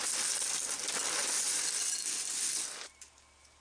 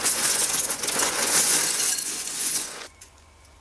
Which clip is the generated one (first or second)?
second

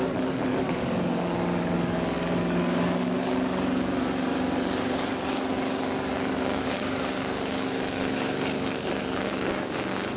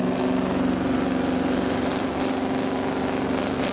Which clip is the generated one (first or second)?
first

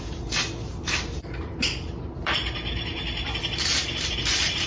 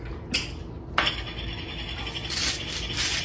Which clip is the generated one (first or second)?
first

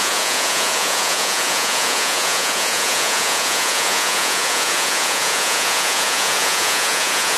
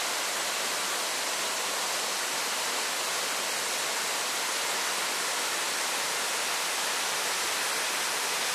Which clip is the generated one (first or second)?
first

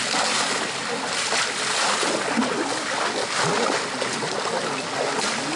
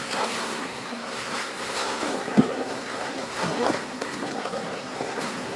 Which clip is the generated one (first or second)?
second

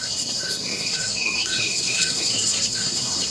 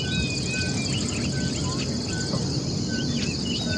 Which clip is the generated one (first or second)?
first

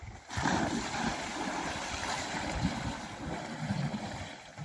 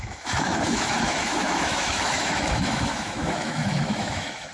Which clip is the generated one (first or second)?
second